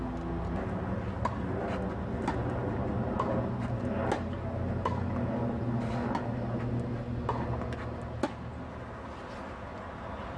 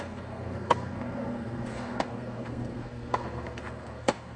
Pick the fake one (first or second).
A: second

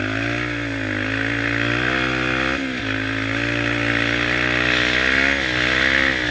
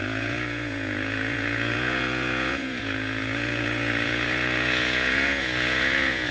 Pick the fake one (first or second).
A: second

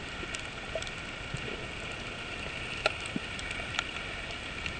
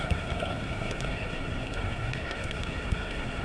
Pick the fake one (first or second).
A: second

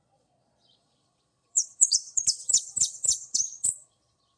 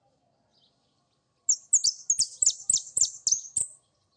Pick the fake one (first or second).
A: first